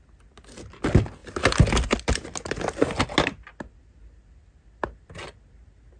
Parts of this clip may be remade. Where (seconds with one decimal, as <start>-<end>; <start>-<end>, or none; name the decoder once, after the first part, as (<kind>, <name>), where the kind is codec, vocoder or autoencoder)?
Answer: none